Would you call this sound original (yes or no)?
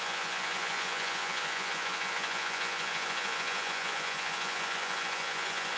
no